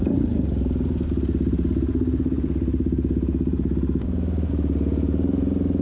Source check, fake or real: real